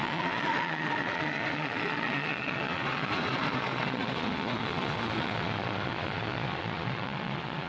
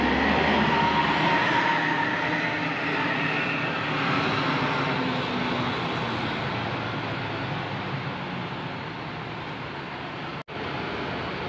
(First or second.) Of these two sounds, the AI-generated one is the first